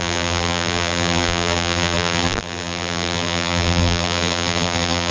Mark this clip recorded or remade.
remade